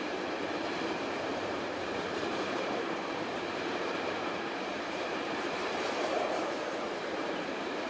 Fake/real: fake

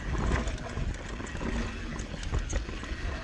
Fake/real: real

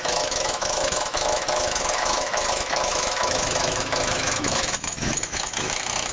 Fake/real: fake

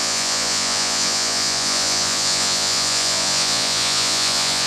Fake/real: fake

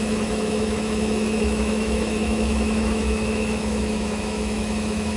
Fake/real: fake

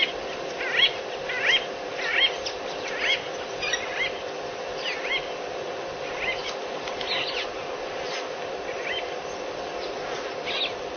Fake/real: real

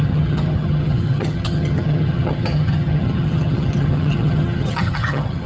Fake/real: fake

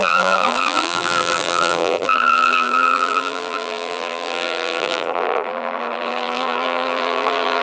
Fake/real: fake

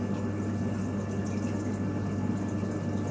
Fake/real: real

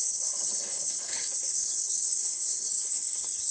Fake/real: fake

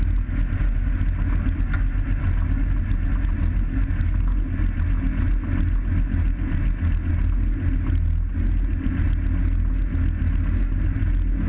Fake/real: real